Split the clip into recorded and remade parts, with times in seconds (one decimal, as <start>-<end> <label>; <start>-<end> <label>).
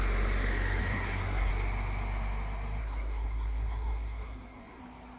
0.0-0.8 recorded; 0.8-1.5 remade; 1.5-2.8 recorded; 2.8-4.8 remade; 4.8-5.2 recorded